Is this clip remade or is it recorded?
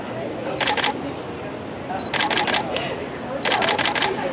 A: recorded